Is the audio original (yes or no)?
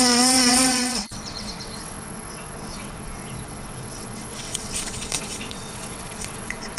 no